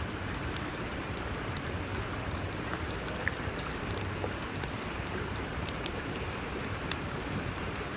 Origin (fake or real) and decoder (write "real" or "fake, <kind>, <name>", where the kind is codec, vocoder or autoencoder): fake, vocoder, BigVGAN v2